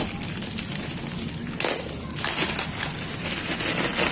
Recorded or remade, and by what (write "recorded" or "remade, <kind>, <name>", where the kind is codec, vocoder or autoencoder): recorded